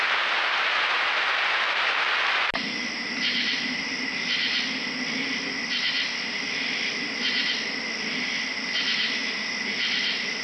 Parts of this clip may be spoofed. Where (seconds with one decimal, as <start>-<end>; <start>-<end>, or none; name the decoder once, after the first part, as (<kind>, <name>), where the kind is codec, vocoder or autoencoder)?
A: none